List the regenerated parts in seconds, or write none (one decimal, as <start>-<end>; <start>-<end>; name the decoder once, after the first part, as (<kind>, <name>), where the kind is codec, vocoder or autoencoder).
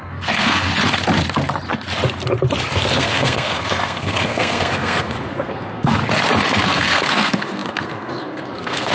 0.0-0.7 (codec, SNAC); 2.9-6.0; 6.6-8.9